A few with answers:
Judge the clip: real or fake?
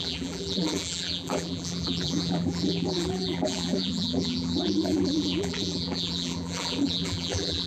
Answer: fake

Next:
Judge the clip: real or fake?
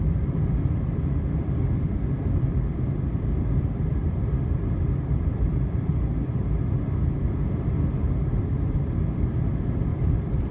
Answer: fake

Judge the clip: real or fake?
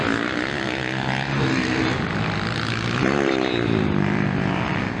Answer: real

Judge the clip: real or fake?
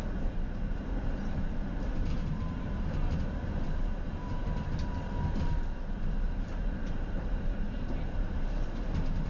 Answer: fake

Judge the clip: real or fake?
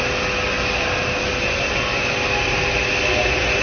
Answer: real